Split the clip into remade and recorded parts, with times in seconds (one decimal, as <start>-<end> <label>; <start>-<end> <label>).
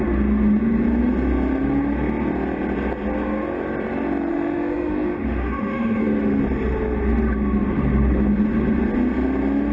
0.0-4.3 recorded; 4.3-6.4 remade; 6.4-9.7 recorded